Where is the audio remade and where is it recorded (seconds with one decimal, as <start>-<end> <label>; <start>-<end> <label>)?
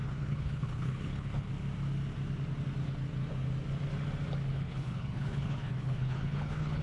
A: 0.0-1.5 remade; 1.5-4.5 recorded; 4.5-6.8 remade